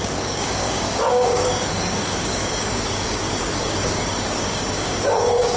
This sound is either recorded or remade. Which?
remade